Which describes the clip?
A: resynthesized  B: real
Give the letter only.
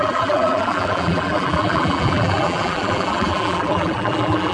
A